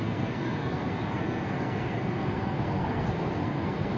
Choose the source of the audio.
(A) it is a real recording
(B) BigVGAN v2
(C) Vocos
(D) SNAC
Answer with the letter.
D